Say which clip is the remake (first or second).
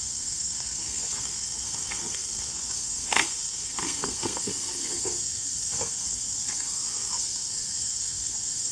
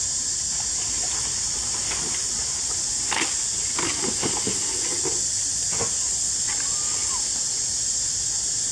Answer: first